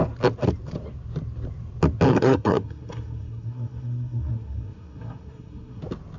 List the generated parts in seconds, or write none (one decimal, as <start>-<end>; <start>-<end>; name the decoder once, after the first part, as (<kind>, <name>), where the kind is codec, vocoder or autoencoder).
2.1-5.8 (codec, SNAC)